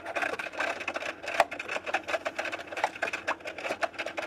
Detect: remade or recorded recorded